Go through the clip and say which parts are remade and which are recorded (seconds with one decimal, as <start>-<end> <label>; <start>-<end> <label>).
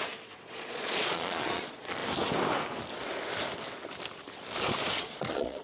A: 0.0-2.0 remade; 2.0-5.0 recorded; 5.0-5.6 remade